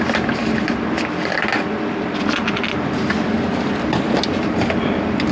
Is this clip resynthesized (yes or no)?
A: no